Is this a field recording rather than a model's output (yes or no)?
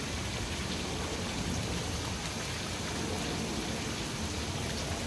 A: yes